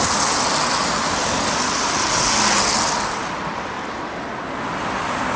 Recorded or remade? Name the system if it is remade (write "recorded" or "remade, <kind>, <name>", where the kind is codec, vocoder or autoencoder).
recorded